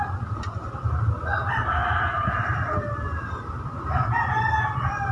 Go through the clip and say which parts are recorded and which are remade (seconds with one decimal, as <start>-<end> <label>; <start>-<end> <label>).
0.0-5.1 recorded